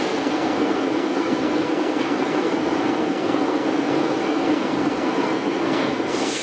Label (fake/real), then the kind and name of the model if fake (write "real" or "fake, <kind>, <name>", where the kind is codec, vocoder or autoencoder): fake, codec, SNAC